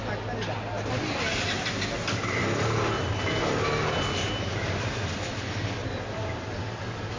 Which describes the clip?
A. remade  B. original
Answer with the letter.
B